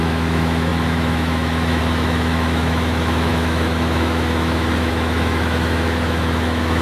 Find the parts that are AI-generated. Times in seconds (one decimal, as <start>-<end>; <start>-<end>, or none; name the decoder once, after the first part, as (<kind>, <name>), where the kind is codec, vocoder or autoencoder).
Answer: 0.0-6.8 (autoencoder, DAC-VAE)